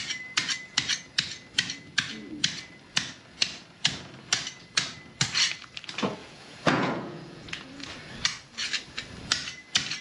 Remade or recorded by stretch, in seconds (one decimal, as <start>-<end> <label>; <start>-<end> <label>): 0.0-6.2 recorded; 6.2-7.7 remade; 7.7-10.0 recorded